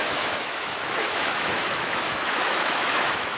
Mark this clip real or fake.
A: fake